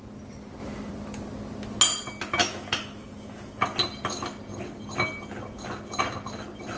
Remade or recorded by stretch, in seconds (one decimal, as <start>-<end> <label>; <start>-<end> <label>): 0.0-2.4 recorded; 2.4-3.6 remade; 3.6-6.8 recorded